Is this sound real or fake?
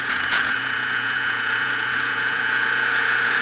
fake